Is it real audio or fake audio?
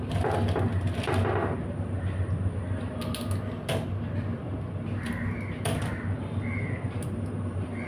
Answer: real